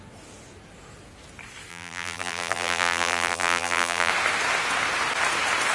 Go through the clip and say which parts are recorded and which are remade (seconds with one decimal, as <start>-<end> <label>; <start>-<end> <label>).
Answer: 0.0-1.7 recorded; 1.7-4.1 remade; 4.1-5.7 recorded